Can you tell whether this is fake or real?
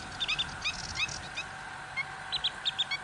real